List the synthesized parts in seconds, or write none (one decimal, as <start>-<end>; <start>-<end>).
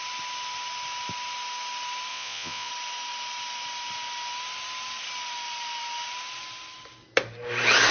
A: 2.1-2.7